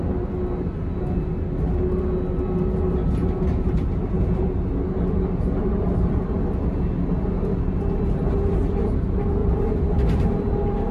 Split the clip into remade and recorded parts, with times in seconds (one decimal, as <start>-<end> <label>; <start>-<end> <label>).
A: 0.0-9.4 recorded; 9.4-10.9 remade